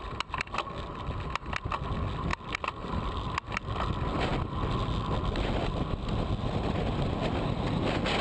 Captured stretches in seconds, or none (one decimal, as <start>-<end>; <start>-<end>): 0.0-8.2